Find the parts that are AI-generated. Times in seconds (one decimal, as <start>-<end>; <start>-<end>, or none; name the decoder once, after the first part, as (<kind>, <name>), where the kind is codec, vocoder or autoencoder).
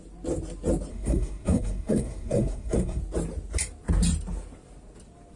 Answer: 0.9-3.0 (codec, SNAC)